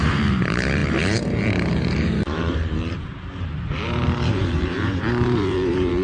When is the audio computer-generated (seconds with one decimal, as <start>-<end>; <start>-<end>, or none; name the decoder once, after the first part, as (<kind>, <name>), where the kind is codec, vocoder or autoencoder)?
0.0-6.0 (vocoder, BigVGAN v2)